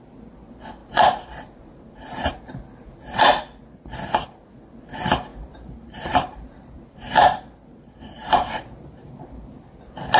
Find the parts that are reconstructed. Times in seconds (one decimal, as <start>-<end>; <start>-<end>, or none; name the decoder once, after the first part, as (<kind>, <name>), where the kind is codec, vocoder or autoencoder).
0.8-2.4 (vocoder, BigVGAN v2); 5.3-9.1